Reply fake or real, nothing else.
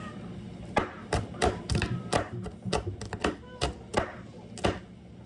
real